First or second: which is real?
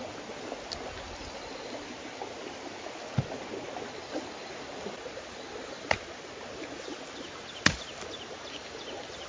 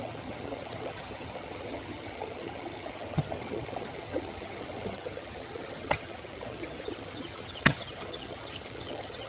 first